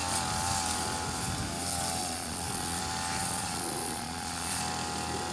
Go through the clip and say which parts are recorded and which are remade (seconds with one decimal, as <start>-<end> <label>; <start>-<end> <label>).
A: 0.0-2.0 recorded; 2.0-2.8 remade; 2.8-3.2 recorded; 3.2-4.6 remade; 4.6-5.3 recorded